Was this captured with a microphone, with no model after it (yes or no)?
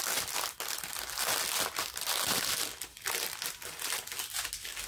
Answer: yes